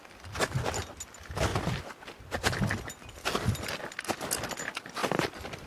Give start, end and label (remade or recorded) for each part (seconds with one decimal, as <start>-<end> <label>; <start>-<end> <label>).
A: 0.0-5.0 recorded; 5.0-5.7 remade